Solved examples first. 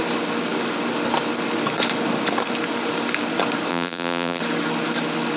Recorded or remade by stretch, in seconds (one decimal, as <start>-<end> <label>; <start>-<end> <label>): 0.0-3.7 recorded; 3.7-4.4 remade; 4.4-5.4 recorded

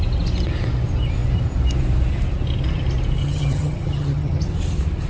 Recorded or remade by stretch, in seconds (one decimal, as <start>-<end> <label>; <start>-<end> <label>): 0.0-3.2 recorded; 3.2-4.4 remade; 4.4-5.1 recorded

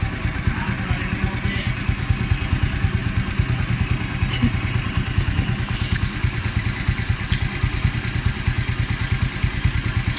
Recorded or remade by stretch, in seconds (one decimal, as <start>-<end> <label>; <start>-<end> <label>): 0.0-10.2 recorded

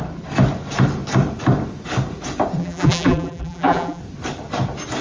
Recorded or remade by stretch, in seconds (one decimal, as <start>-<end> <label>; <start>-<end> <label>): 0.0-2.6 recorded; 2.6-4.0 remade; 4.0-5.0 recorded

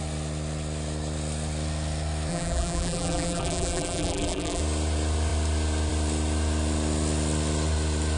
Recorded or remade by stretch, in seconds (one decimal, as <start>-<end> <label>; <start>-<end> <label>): 0.0-2.3 recorded; 2.3-4.6 remade; 4.6-8.2 recorded

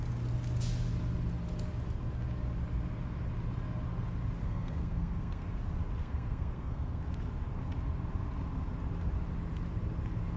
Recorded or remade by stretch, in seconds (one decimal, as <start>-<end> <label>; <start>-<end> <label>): 0.0-4.4 recorded; 4.4-5.6 remade; 5.6-6.0 recorded; 6.0-7.0 remade; 7.0-10.4 recorded

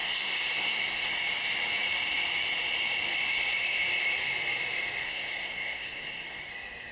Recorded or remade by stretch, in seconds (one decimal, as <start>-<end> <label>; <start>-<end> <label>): 0.0-1.1 remade; 1.1-5.0 recorded; 5.0-6.5 remade; 6.5-6.9 recorded